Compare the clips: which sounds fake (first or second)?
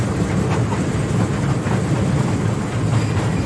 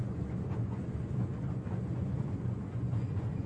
second